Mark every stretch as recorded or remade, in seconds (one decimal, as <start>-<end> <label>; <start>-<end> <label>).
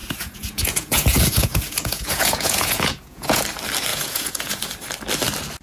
0.0-3.4 remade; 3.4-3.9 recorded; 3.9-4.6 remade; 4.6-5.6 recorded